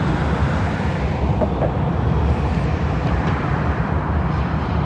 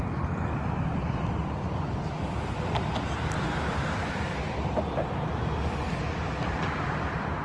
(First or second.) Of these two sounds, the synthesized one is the first